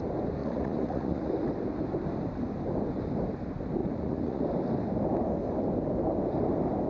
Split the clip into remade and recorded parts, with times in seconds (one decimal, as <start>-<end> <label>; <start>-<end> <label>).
0.0-0.4 recorded; 0.4-1.3 remade; 1.3-3.8 recorded; 3.8-4.4 remade; 4.4-6.9 recorded